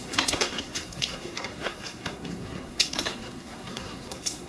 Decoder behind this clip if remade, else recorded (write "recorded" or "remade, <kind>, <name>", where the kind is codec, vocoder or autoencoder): remade, codec, SNAC